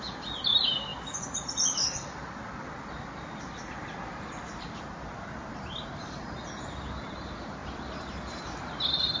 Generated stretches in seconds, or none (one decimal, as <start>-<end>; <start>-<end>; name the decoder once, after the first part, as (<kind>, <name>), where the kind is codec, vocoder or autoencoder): none